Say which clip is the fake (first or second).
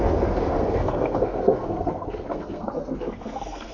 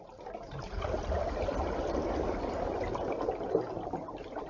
first